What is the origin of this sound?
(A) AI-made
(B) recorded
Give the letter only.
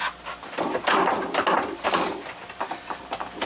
B